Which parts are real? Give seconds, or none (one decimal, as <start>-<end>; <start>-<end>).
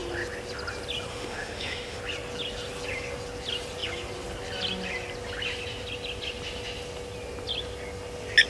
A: 0.0-1.1; 2.0-8.5